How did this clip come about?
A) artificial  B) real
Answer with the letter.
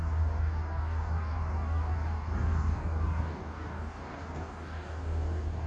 A